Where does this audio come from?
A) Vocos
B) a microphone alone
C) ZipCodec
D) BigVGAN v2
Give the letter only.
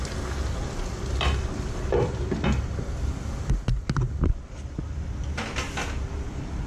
B